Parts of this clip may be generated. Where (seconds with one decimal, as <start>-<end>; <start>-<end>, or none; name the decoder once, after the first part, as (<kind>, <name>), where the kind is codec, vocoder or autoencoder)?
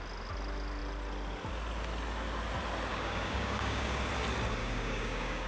2.9-4.1 (codec, DAC); 4.6-5.5